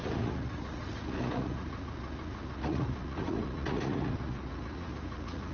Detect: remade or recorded remade